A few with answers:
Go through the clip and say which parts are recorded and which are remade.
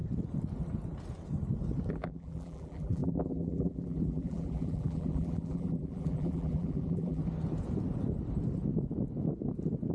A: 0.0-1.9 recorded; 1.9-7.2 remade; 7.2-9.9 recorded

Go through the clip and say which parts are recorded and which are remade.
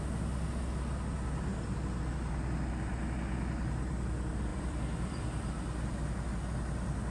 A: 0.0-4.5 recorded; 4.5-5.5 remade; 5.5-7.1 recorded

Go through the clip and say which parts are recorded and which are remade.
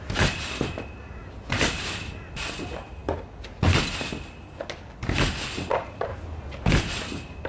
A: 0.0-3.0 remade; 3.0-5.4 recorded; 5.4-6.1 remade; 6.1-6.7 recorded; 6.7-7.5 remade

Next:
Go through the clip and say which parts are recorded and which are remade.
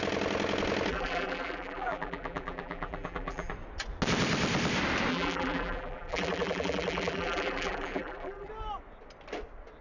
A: 0.0-0.9 recorded; 0.9-3.5 remade; 3.5-5.1 recorded; 5.1-8.5 remade; 8.5-9.8 recorded